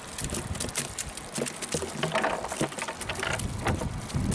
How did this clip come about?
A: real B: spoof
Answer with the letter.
A